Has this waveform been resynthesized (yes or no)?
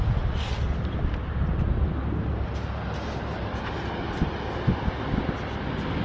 no